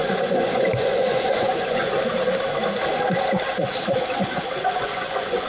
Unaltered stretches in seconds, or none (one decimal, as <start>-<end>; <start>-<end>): 1.9-4.6